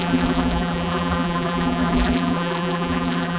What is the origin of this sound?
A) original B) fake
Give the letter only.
B